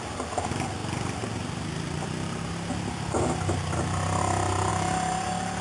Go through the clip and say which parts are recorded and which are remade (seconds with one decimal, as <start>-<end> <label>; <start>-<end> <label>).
0.0-5.6 recorded